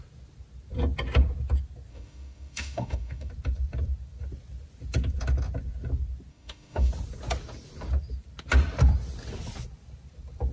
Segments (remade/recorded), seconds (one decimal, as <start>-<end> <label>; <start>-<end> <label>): 0.0-1.9 recorded; 1.9-3.3 remade; 3.3-6.3 recorded; 6.3-6.9 remade; 6.9-10.5 recorded